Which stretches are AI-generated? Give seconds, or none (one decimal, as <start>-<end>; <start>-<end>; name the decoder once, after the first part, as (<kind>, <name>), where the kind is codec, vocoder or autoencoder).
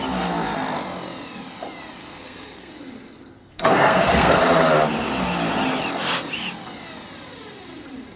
2.0-2.7 (codec, SNAC); 3.4-4.4